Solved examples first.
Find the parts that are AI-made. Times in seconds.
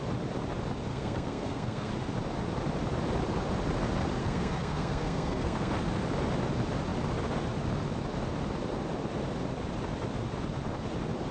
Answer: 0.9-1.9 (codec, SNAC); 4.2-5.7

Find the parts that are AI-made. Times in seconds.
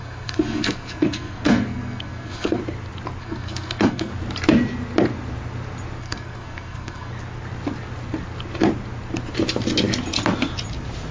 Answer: 0.0-2.6 (codec, SNAC); 3.2-4.1; 6.0-7.1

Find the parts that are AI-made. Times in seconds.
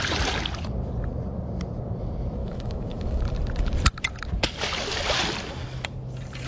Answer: 2.4-3.2 (autoencoder, DAC-VAE)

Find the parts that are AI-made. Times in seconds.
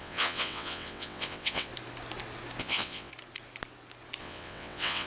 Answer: 0.0-1.7 (vocoder, WaveNeXt); 2.6-3.1; 4.2-5.1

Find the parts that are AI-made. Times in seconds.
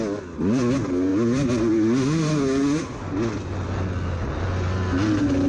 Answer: none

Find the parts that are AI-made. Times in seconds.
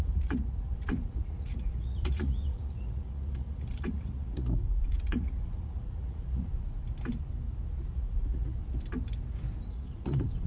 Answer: 0.0-6.5 (vocoder, Vocos); 7.9-8.6; 9.7-10.5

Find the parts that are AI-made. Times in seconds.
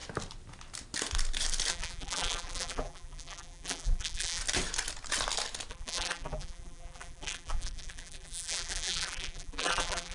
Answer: 1.7-4.4 (vocoder, BigVGAN v2); 5.7-10.1